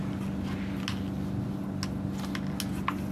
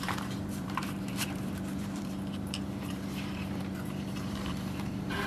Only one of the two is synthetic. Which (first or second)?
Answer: second